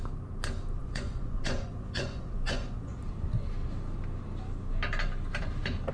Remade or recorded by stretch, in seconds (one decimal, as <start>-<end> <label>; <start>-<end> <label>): 0.0-0.8 recorded; 0.8-3.0 remade; 3.0-5.9 recorded